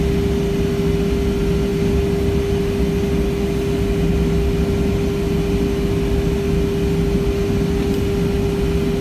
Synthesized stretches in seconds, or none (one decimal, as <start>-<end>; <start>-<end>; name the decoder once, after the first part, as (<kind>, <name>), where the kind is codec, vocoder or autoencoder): none